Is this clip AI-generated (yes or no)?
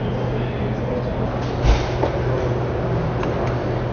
no